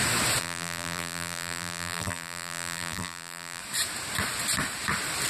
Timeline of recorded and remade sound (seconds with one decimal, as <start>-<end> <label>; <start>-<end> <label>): 0.0-0.4 recorded; 0.4-3.6 remade; 3.6-5.3 recorded